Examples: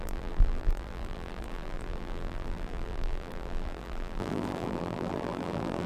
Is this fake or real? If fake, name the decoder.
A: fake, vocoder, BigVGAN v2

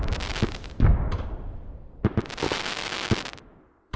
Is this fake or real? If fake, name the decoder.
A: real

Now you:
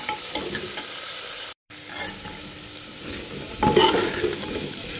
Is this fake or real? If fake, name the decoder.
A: real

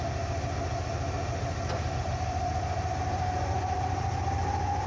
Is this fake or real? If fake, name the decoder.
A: real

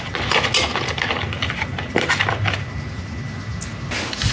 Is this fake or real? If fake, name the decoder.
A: real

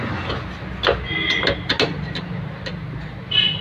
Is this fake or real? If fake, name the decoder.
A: real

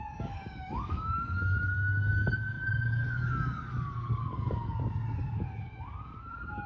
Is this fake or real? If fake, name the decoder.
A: fake, codec, DAC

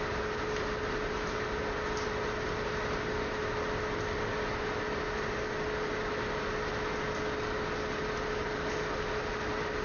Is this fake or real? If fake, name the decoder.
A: real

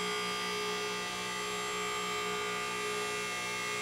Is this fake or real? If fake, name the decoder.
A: real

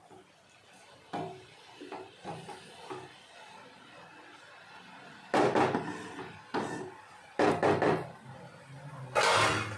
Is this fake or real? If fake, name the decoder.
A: real